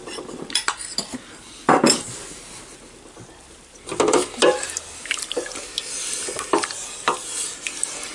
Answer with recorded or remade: recorded